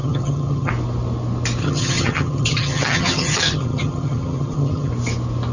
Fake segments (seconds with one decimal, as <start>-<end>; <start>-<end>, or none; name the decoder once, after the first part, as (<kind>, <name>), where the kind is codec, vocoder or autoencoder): 0.0-0.7 (vocoder, HiFi-GAN); 1.6-4.9